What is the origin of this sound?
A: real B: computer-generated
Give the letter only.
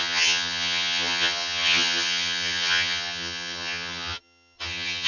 B